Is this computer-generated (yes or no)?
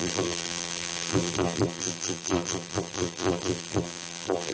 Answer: yes